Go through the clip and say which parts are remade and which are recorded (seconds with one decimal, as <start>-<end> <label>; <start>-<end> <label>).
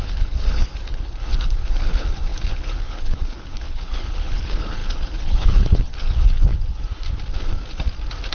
0.0-6.5 remade; 6.5-8.3 recorded